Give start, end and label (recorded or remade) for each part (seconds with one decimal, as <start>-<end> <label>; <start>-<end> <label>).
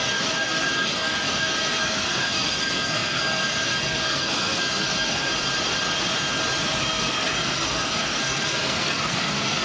0.0-5.3 remade; 5.3-6.8 recorded; 6.8-9.6 remade